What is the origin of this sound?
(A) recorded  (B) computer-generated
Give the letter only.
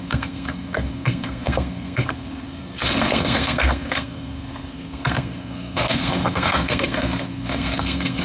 B